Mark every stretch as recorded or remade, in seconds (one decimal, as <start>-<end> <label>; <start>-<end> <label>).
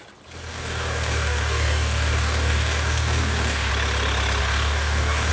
0.0-0.5 recorded; 0.5-3.7 remade; 3.7-4.4 recorded; 4.4-5.3 remade